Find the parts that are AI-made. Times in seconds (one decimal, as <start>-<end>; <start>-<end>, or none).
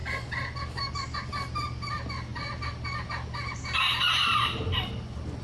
none